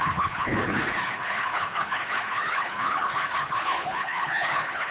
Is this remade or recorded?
remade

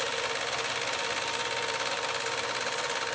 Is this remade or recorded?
recorded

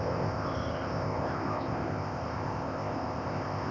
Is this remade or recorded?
remade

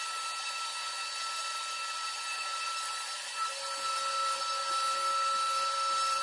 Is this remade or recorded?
recorded